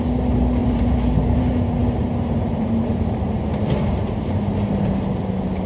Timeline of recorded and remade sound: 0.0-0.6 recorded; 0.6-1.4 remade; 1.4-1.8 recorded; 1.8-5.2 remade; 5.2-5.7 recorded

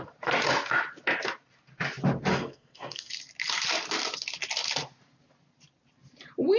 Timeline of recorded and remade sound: 0.0-2.3 recorded; 2.3-3.1 remade; 3.1-6.6 recorded

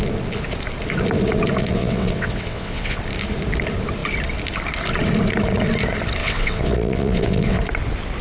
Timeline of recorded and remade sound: 0.0-1.6 recorded; 1.6-3.0 remade; 3.0-6.2 recorded; 6.2-7.6 remade; 7.6-8.2 recorded

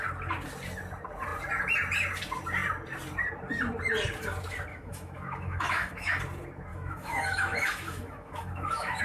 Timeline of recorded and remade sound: 0.0-4.7 recorded; 4.7-6.2 remade; 6.2-6.7 recorded; 6.7-9.0 remade

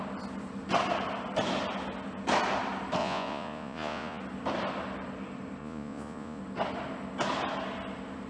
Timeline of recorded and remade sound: 0.0-3.0 recorded; 3.0-4.2 remade; 4.2-5.6 recorded; 5.6-6.4 remade; 6.4-8.3 recorded

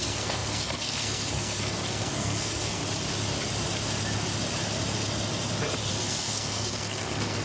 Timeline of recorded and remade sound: 0.0-2.8 remade; 2.8-5.9 recorded; 5.9-7.4 remade

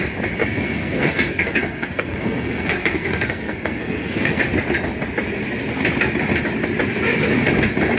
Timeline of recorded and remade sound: 0.0-0.4 recorded; 0.4-4.4 remade; 4.4-8.0 recorded

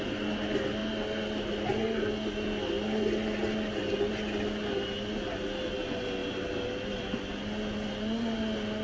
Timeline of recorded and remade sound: 0.0-8.8 recorded